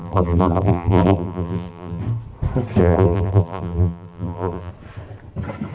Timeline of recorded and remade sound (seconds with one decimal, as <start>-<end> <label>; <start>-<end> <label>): 0.0-2.0 remade; 2.0-2.8 recorded; 2.8-4.7 remade; 4.7-5.7 recorded